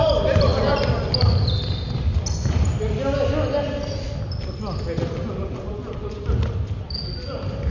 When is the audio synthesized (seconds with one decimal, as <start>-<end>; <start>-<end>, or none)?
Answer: none